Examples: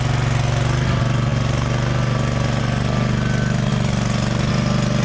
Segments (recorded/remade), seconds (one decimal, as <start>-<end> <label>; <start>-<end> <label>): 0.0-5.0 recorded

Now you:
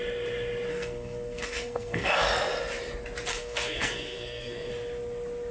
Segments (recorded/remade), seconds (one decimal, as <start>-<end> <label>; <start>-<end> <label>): 0.0-0.7 recorded; 0.7-2.1 remade; 2.1-3.3 recorded; 3.3-4.7 remade; 4.7-5.5 recorded

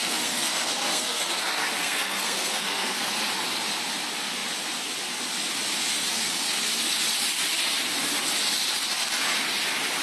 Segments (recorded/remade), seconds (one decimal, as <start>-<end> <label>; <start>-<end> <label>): 0.0-1.4 remade; 1.4-1.8 recorded; 1.8-3.1 remade; 3.1-6.1 recorded; 6.1-6.6 remade; 6.6-10.0 recorded

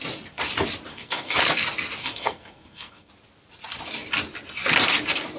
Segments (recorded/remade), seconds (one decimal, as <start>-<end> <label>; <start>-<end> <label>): 0.0-0.9 recorded; 0.9-1.4 remade; 1.4-2.0 recorded; 2.0-3.1 remade; 3.1-5.4 recorded